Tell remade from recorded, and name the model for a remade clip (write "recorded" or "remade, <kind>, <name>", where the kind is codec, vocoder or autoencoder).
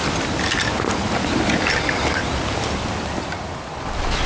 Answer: recorded